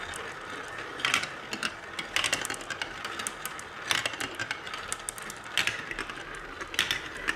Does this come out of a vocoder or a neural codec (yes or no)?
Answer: no